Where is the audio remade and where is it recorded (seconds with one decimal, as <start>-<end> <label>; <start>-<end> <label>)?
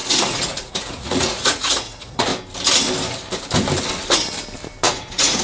0.0-2.3 remade; 2.3-4.8 recorded; 4.8-5.4 remade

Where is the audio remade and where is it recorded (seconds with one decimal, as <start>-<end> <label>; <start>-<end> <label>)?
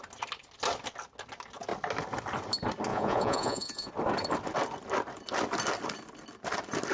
0.0-2.9 recorded; 2.9-3.9 remade; 3.9-6.9 recorded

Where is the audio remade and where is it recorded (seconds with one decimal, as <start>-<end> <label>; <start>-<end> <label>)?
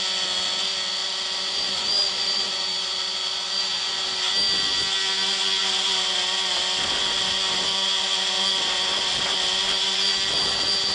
0.0-1.0 recorded; 1.0-4.3 remade; 4.3-10.9 recorded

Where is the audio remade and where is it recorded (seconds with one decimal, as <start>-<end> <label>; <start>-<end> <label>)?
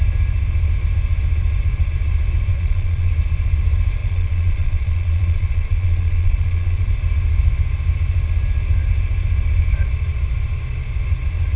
0.0-2.5 recorded; 2.5-3.1 remade; 3.1-4.0 recorded; 4.0-6.9 remade; 6.9-11.6 recorded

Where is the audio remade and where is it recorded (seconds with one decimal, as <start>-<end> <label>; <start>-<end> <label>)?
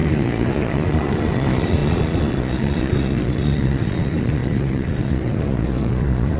0.0-6.4 remade